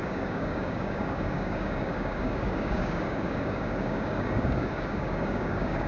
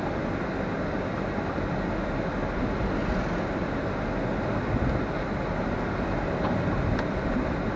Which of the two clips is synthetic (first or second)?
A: first